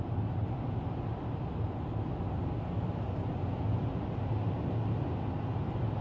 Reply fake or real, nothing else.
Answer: real